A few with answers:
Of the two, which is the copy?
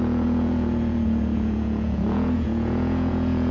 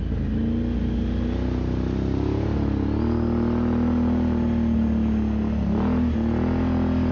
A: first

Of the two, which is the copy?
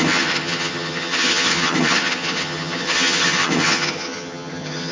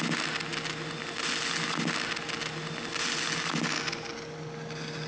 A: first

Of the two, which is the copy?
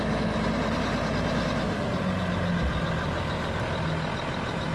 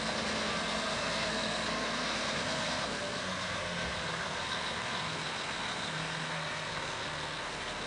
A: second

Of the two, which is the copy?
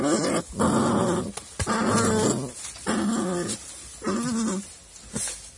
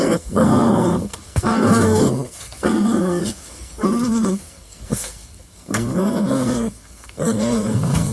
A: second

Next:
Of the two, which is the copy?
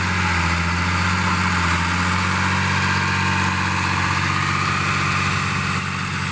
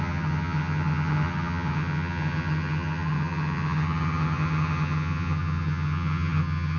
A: second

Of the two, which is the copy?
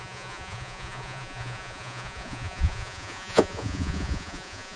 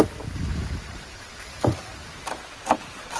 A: first